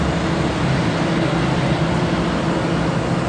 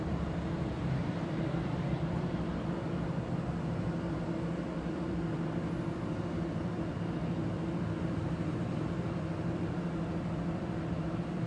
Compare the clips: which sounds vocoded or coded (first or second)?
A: second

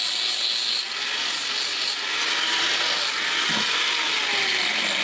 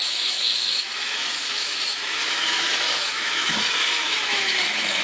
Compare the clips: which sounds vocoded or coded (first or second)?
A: second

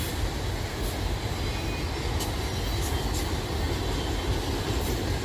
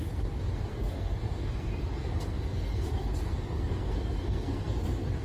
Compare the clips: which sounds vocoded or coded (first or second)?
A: second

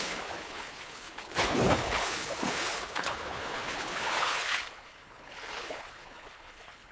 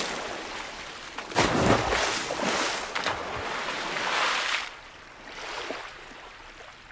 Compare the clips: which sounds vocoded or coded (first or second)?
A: first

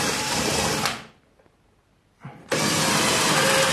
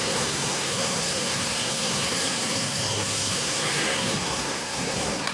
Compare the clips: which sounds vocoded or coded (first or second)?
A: second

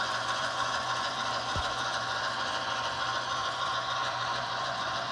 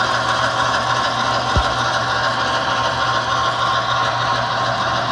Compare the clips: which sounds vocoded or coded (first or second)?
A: first